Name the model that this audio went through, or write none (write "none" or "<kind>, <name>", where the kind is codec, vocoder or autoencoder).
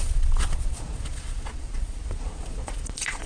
vocoder, Vocos